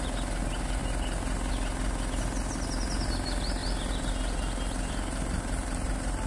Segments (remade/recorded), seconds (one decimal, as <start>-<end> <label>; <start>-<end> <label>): 0.0-6.3 recorded

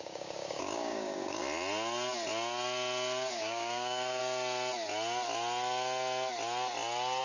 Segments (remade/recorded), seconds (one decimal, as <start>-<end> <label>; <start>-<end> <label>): 0.0-1.4 remade; 1.4-3.3 recorded; 3.3-4.2 remade; 4.2-7.2 recorded